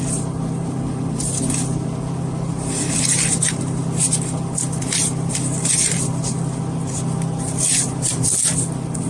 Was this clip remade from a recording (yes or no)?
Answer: no